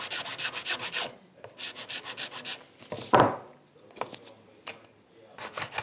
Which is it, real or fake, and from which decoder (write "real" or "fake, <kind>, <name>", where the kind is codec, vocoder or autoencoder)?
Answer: real